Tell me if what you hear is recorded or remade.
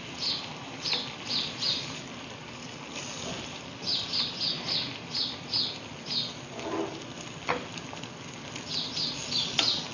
recorded